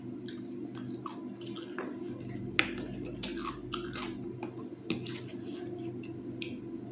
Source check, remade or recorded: recorded